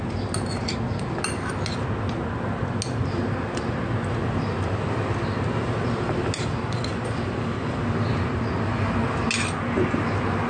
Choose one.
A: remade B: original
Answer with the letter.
B